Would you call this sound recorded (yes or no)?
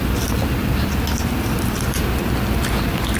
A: yes